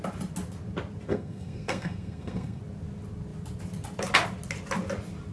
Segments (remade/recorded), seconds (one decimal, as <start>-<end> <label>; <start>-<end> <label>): 0.0-1.1 recorded; 1.1-2.6 remade; 2.6-5.3 recorded